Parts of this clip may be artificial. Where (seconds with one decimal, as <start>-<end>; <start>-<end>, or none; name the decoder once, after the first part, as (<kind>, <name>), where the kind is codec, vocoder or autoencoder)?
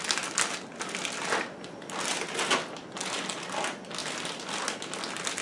none